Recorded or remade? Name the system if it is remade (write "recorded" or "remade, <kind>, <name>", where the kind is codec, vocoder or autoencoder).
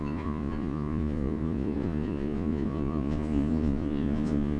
remade, vocoder, Vocos